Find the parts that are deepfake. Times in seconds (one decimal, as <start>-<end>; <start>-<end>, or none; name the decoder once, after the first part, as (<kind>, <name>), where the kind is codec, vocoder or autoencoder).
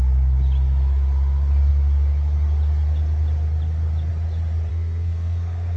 4.7-5.8 (codec, SNAC)